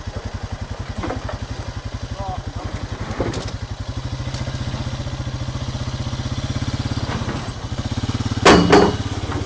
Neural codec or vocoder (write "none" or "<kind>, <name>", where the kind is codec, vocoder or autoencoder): none